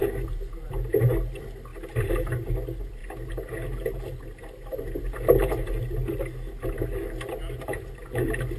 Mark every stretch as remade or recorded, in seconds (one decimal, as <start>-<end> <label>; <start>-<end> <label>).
0.0-8.6 recorded